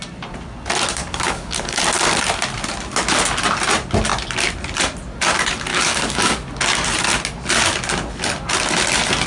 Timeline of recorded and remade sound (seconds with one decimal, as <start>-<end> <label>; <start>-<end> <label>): 0.0-1.0 recorded; 1.0-1.8 remade; 1.8-5.7 recorded; 5.7-6.5 remade; 6.5-9.3 recorded